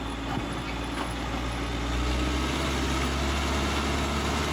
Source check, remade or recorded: recorded